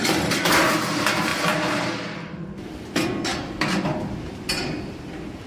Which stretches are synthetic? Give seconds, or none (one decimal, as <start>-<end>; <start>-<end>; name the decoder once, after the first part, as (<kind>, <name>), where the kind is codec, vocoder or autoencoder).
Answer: 1.3-2.7 (vocoder, BigVGAN v2)